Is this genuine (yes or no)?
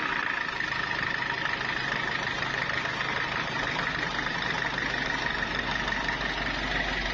yes